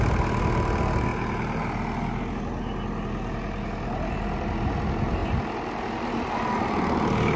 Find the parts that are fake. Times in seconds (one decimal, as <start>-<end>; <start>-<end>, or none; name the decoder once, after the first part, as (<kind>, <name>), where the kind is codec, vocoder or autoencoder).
none